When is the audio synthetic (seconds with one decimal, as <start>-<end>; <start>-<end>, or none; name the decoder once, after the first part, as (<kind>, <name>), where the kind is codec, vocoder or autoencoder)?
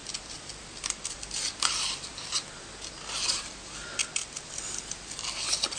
1.5-2.1 (vocoder, BigVGAN v2); 4.0-4.8